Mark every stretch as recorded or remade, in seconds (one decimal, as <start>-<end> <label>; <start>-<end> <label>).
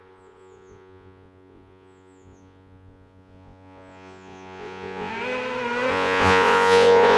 0.0-5.1 remade; 5.1-5.9 recorded; 5.9-7.2 remade